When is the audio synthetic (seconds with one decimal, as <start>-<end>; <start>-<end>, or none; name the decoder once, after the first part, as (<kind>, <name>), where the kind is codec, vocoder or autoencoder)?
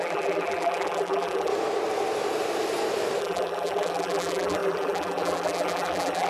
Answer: 0.0-1.5 (vocoder, BigVGAN v2); 3.2-6.3